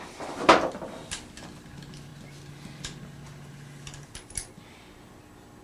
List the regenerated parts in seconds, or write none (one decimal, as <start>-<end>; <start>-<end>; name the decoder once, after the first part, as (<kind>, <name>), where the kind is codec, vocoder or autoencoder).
none

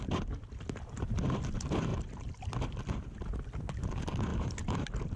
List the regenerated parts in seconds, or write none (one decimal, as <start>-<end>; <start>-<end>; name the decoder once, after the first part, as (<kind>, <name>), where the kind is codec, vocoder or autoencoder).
4.3-5.2 (vocoder, BigVGAN v2)

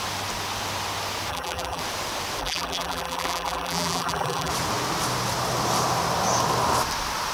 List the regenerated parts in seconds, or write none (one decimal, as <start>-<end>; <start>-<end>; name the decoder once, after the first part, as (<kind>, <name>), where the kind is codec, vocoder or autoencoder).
1.3-1.8 (vocoder, BigVGAN v2); 2.4-4.5

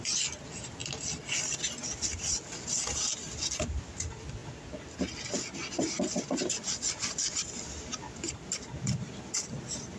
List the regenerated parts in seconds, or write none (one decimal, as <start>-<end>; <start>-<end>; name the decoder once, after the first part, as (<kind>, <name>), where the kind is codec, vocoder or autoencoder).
none

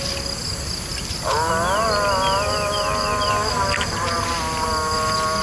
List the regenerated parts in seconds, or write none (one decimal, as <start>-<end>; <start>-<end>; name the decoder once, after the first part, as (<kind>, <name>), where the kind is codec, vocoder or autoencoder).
none

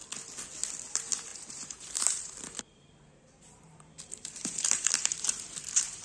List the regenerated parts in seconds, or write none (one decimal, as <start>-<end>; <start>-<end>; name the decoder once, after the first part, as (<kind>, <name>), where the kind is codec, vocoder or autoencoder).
0.9-6.0 (vocoder, BigVGAN v2)

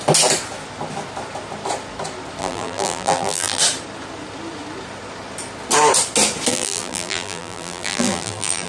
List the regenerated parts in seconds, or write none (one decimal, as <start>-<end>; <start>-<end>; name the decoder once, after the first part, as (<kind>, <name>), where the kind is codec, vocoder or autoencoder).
2.4-3.6 (vocoder, BigVGAN v2); 6.5-8.7